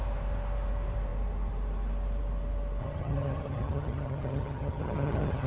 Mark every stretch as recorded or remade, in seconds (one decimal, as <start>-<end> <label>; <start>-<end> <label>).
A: 0.0-2.8 recorded; 2.8-5.5 remade